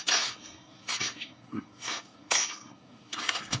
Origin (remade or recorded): remade